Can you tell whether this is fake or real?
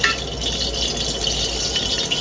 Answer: real